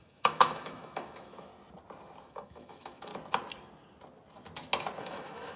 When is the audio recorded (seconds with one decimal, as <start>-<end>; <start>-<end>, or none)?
1.5-2.2; 3.1-5.0